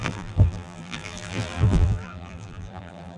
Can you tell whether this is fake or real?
fake